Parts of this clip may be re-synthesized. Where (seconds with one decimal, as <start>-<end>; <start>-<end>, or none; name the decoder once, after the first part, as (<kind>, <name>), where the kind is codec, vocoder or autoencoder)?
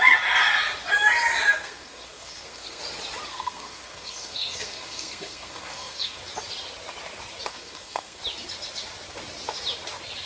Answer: 1.5-2.8 (codec, SNAC); 3.3-6.2; 7.5-8.2